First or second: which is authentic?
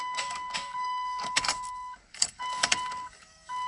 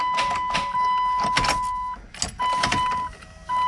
second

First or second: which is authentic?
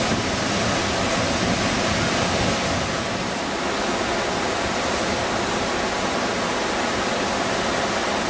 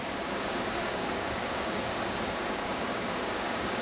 first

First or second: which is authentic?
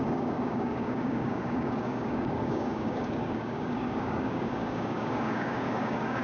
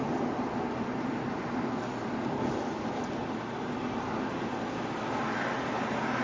second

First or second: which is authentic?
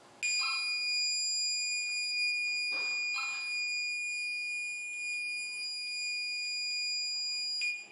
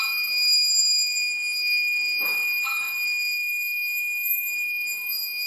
first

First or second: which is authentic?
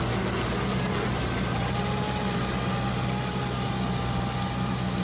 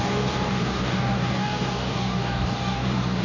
first